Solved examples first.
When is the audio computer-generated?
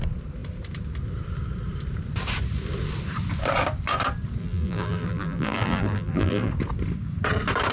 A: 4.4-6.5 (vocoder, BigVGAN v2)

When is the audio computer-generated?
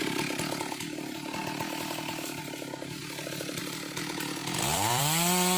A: 4.4-5.0 (vocoder, BigVGAN v2)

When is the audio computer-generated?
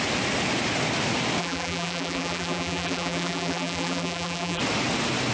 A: 1.4-4.6 (vocoder, BigVGAN v2)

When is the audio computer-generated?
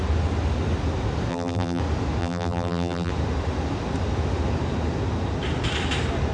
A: 1.3-1.8 (vocoder, BigVGAN v2); 2.2-3.1